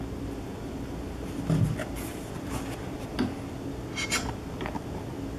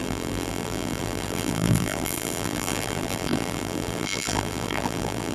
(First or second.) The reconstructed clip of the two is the second